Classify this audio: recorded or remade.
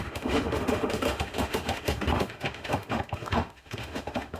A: remade